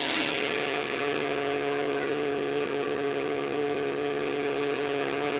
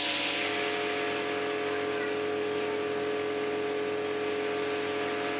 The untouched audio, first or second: second